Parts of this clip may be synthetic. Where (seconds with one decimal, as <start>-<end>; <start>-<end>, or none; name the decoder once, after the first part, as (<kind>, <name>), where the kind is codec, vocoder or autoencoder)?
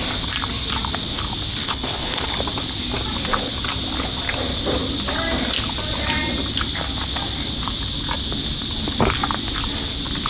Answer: 1.6-2.4 (codec, HILCodec)